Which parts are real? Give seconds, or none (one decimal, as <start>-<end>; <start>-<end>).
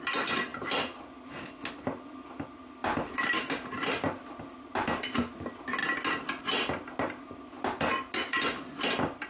0.0-9.3